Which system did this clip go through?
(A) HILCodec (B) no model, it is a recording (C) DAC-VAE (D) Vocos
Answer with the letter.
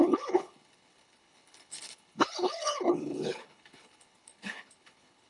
A